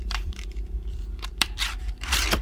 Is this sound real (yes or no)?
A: no